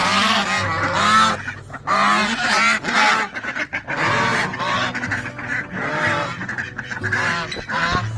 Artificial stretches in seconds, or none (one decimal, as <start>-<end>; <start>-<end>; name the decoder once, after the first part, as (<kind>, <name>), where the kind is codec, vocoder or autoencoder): none

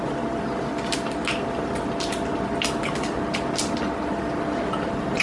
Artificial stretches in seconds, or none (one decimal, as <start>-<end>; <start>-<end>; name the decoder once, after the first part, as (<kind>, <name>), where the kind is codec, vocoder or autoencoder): none